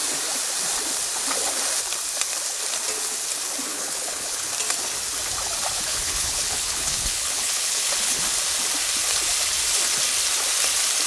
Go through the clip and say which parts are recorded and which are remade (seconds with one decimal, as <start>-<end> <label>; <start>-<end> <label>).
0.0-3.7 recorded; 3.7-4.4 remade; 4.4-5.9 recorded; 5.9-8.2 remade; 8.2-11.1 recorded